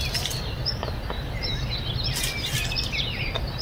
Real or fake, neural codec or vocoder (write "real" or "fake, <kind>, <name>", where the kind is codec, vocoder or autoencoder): fake, vocoder, BigVGAN v2